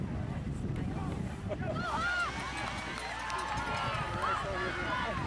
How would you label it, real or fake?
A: real